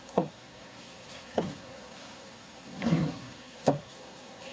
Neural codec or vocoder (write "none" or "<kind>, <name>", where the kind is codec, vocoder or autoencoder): codec, SNAC